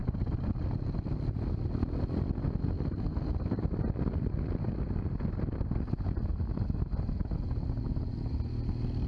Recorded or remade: recorded